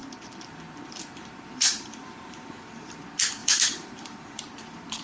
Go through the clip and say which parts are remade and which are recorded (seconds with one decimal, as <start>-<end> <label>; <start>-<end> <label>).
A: 0.0-3.0 remade; 3.0-3.4 recorded; 3.4-5.0 remade